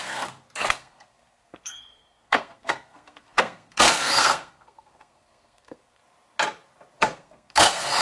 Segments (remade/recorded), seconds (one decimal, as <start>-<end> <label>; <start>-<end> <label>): 0.0-6.0 remade; 6.0-7.0 recorded; 7.0-8.0 remade